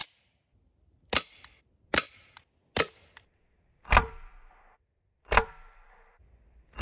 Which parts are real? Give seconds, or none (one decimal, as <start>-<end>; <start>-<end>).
0.0-6.8